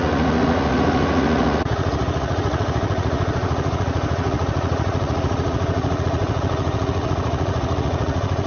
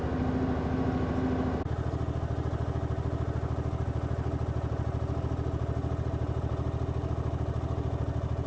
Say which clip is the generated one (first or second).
first